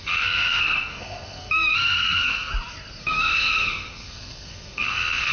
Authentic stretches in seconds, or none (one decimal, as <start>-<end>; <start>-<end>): 2.5-3.0